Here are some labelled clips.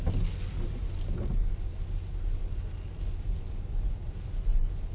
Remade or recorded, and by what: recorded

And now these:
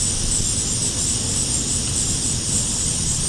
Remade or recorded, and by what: recorded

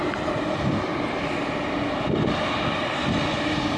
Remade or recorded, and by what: recorded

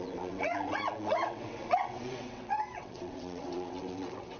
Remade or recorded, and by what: remade, vocoder, WaveNeXt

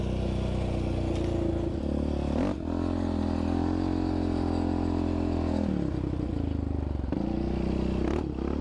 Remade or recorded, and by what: recorded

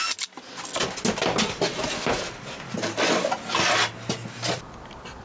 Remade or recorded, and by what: recorded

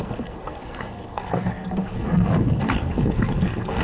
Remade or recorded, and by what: remade, codec, SNAC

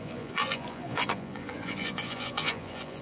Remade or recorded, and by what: remade, vocoder, Vocos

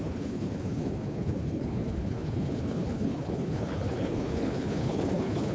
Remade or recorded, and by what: remade, codec, HILCodec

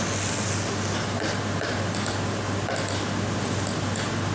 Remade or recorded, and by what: recorded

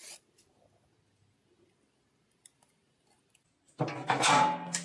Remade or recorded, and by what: recorded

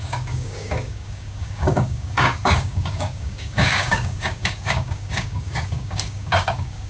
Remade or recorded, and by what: remade, codec, DAC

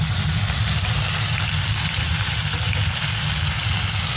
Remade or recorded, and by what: recorded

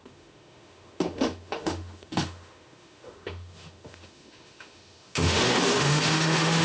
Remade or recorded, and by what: remade, autoencoder, DAC-VAE